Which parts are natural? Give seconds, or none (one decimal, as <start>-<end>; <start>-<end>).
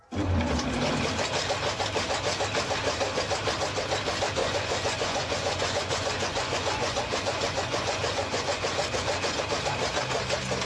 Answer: 0.0-4.4; 9.4-10.7